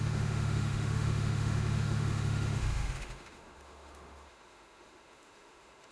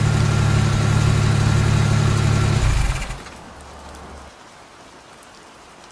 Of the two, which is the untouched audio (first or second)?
second